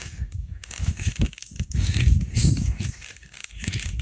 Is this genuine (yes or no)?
no